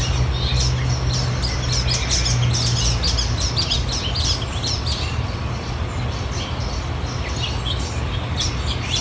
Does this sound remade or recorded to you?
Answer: recorded